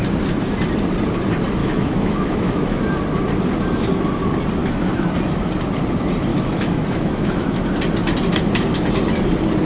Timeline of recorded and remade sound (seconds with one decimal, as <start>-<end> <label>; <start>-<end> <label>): 0.0-1.6 recorded; 1.6-2.8 remade; 2.8-4.6 recorded; 4.6-5.1 remade; 5.1-6.3 recorded; 6.3-7.6 remade; 7.6-9.6 recorded